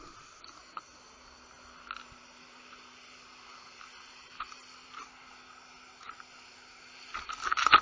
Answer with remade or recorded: recorded